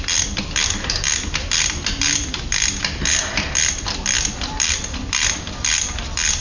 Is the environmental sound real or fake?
fake